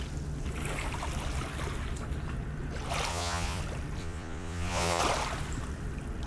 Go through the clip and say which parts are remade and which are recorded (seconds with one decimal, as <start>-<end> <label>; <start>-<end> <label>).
0.0-3.1 recorded; 3.1-3.6 remade; 3.6-4.0 recorded; 4.0-5.0 remade; 5.0-6.3 recorded